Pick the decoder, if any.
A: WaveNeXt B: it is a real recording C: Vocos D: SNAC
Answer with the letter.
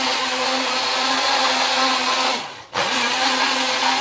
C